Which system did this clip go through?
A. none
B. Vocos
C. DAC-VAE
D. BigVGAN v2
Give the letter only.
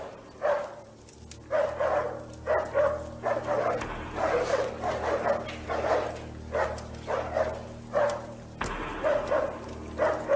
A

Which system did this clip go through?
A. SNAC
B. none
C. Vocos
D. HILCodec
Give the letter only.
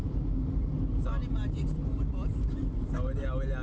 B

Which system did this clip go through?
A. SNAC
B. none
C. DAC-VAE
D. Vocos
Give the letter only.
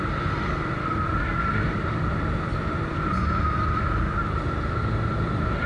B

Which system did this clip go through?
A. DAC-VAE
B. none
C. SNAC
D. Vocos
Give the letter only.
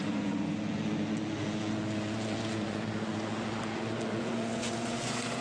D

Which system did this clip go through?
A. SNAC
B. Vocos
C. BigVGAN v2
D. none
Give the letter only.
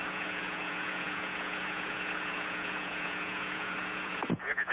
B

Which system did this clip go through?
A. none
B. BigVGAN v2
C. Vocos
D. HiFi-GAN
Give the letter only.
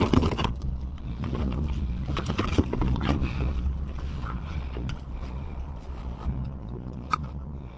C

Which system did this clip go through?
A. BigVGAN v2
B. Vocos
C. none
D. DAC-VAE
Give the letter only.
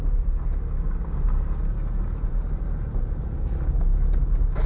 C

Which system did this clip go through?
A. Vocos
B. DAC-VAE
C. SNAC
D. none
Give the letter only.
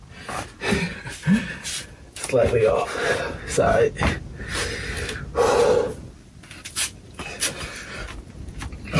D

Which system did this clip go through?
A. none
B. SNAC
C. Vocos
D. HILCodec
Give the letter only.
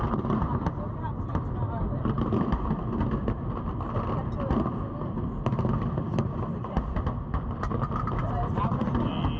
A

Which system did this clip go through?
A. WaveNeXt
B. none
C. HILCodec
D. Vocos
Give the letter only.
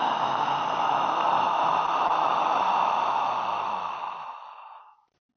B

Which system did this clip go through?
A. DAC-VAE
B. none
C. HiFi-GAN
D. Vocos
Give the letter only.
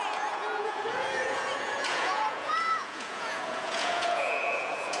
D